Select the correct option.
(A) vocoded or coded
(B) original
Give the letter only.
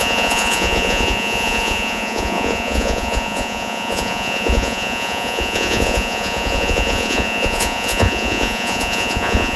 A